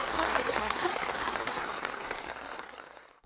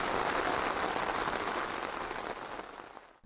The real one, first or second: second